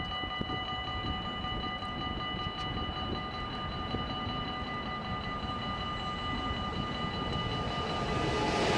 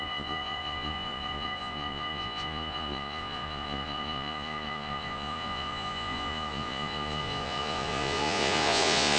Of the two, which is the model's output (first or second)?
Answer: second